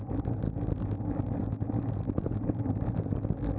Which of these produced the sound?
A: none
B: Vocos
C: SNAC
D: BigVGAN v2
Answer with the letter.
A